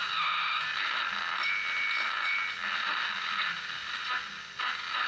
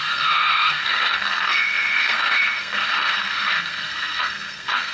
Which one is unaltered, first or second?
first